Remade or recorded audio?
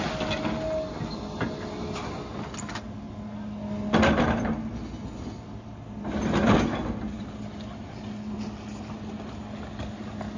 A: recorded